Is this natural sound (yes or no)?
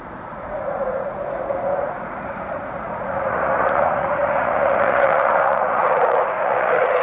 no